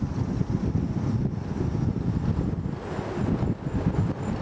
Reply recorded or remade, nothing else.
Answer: recorded